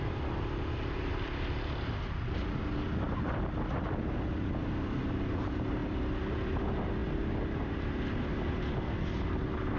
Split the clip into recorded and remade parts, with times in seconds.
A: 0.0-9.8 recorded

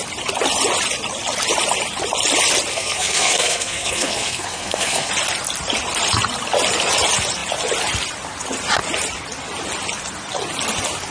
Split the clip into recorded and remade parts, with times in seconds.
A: 0.0-2.7 recorded; 2.7-5.1 remade; 5.1-11.1 recorded

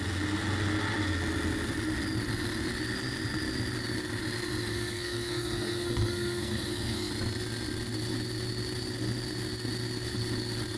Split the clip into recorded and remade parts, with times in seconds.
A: 0.0-4.7 recorded; 4.7-7.1 remade; 7.1-10.8 recorded

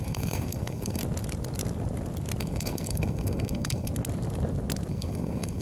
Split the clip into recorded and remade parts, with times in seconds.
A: 0.0-1.0 remade; 1.0-2.4 recorded; 2.4-3.9 remade; 3.9-4.9 recorded; 4.9-5.6 remade

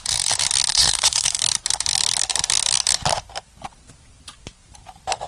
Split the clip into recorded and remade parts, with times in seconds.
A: 0.0-0.7 recorded; 0.7-1.4 remade; 1.4-5.3 recorded